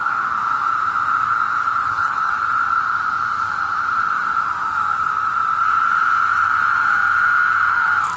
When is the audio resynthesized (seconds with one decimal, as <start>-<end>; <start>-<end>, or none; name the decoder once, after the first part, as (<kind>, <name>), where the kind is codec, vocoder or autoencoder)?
1.8-2.3 (codec, HILCodec)